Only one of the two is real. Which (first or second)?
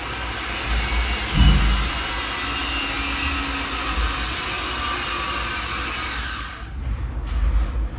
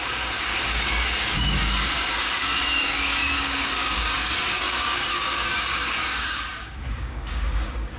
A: first